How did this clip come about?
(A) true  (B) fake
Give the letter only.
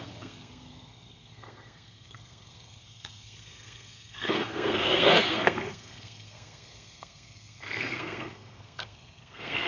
B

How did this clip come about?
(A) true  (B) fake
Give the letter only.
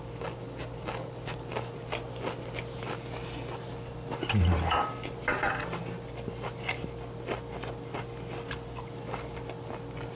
A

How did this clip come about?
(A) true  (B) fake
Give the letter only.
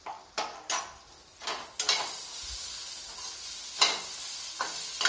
A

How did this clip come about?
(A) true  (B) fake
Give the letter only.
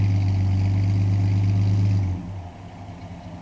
A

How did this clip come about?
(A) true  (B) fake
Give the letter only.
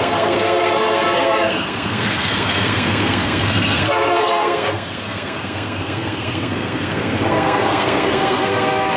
B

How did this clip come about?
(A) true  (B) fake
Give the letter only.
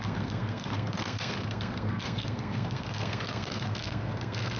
B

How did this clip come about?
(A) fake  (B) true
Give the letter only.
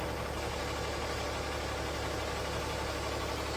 B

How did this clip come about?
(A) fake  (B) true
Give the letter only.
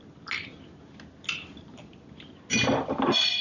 B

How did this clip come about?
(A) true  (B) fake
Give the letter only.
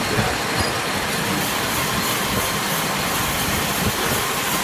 A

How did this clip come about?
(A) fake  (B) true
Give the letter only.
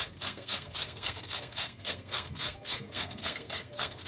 A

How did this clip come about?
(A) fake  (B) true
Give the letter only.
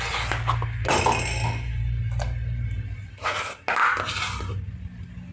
B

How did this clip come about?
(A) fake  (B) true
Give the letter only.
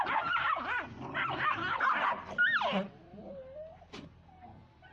B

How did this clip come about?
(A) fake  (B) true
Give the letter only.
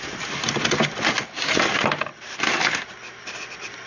B